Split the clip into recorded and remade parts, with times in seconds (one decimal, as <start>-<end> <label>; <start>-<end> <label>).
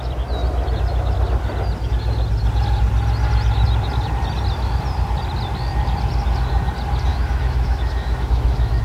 0.0-7.1 recorded; 7.1-8.8 remade